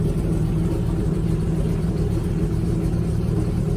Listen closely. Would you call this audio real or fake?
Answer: real